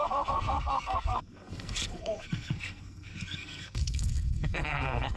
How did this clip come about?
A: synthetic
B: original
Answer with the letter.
A